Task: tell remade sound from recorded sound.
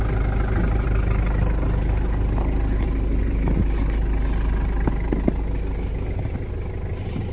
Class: recorded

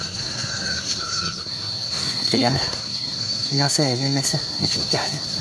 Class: remade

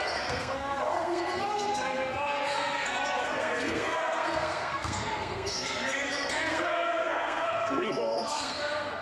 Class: remade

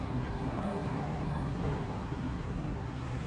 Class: remade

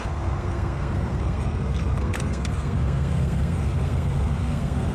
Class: remade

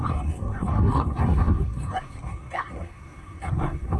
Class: remade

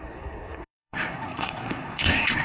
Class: remade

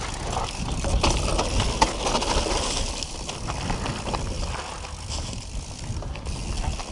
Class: recorded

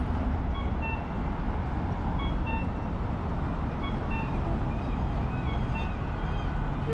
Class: recorded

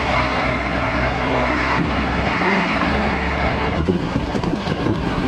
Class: remade